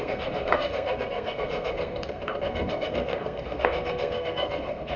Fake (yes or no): yes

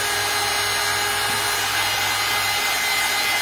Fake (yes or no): no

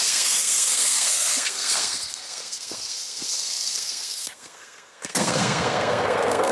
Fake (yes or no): yes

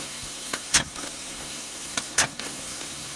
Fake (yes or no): yes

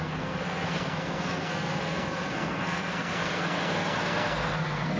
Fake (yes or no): yes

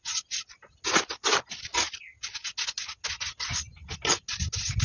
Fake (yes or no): no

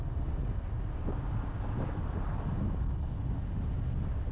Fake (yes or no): no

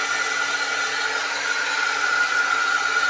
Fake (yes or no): no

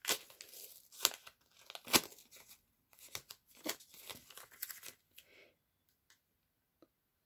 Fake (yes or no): no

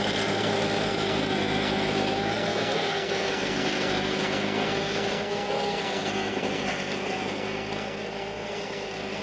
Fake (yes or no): yes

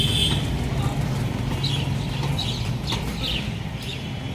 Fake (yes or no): no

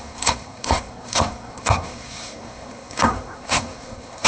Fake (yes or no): yes